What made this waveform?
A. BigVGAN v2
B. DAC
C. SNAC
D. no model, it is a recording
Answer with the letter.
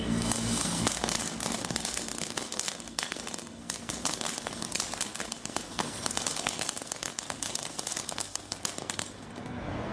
C